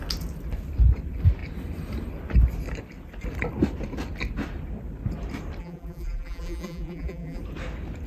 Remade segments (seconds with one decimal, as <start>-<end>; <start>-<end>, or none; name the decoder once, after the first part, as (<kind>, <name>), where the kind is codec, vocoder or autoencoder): 5.6-7.4 (vocoder, BigVGAN v2)